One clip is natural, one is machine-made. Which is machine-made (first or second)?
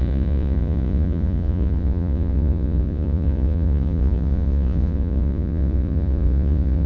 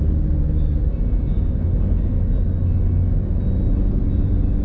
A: first